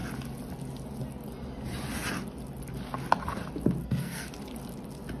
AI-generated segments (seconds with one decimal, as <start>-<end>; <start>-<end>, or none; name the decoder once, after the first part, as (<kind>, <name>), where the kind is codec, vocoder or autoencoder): 3.8-4.3 (codec, SNAC)

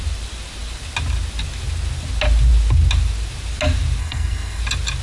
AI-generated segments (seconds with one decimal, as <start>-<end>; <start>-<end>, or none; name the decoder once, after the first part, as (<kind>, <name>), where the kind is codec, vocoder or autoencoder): 4.0-4.6 (codec, SNAC)

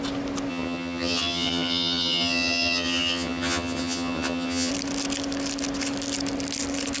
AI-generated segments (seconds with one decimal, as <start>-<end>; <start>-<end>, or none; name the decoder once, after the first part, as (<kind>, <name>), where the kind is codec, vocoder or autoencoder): 0.5-4.7 (vocoder, HiFi-GAN)